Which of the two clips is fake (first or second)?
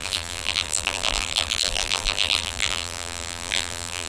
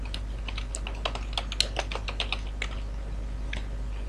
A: first